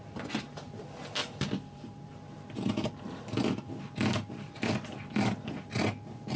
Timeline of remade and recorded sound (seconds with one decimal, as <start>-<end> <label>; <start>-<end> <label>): 0.0-1.2 recorded; 1.2-5.0 remade; 5.0-6.4 recorded